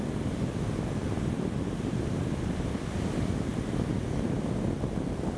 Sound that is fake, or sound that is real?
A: real